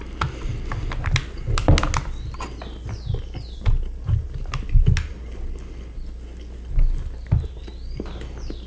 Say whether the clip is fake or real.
real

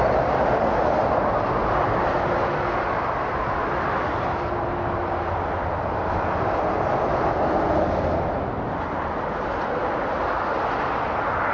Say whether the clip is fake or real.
real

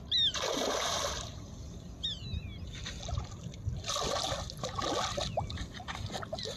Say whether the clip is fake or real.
real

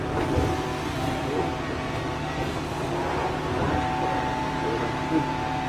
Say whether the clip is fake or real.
real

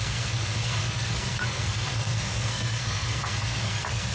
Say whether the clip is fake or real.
fake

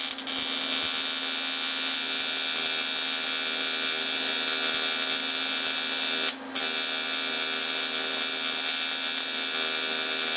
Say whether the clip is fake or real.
real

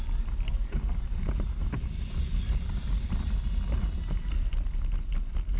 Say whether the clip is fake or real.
real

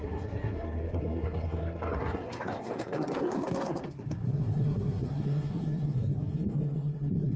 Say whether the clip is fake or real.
fake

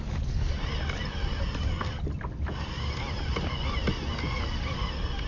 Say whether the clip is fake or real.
real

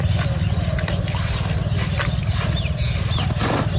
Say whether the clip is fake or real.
real